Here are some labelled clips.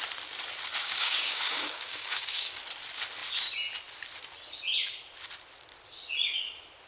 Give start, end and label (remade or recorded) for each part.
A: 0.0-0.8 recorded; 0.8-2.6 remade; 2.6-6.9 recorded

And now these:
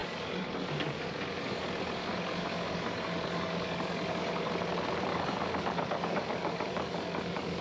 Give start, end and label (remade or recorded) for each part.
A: 0.0-1.6 remade; 1.6-2.0 recorded; 2.0-4.5 remade; 4.5-5.1 recorded; 5.1-7.6 remade

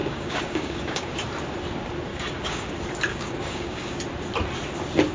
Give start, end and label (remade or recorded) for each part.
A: 0.0-1.1 remade; 1.1-2.1 recorded; 2.1-2.7 remade; 2.7-3.1 recorded; 3.1-4.0 remade; 4.0-5.1 recorded

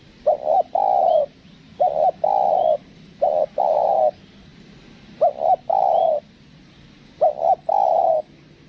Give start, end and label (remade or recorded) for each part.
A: 0.0-8.7 recorded